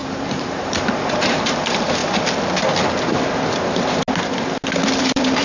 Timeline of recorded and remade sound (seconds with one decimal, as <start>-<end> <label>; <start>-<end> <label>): 0.0-2.0 remade; 2.0-5.0 recorded; 5.0-5.4 remade